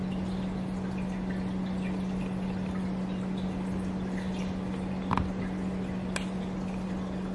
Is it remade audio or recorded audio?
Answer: recorded